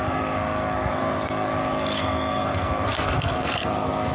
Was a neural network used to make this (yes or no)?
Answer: yes